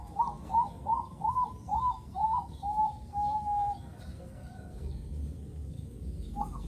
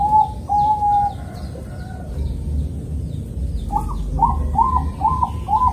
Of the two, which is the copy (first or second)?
first